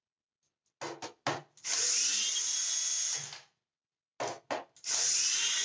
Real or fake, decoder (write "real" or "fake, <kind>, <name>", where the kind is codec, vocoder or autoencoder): real